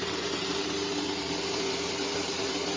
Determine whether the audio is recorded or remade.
remade